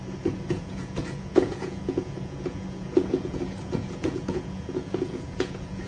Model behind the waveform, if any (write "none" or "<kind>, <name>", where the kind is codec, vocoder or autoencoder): vocoder, Vocos